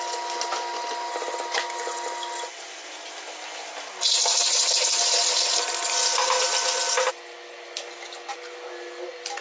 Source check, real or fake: real